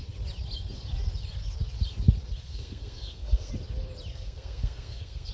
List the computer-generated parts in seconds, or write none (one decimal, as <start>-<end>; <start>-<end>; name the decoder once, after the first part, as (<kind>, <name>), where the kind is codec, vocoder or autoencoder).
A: 2.5-3.5 (codec, SNAC); 4.1-5.3